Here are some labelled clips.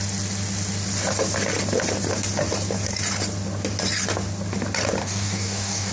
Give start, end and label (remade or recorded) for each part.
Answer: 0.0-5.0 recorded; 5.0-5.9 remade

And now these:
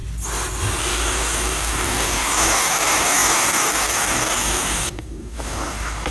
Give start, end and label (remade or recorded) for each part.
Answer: 0.0-0.8 recorded; 0.8-6.1 remade